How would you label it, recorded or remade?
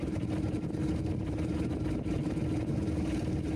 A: recorded